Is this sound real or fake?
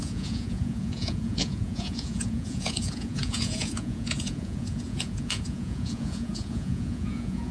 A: fake